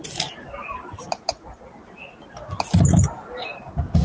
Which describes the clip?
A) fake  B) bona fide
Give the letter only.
B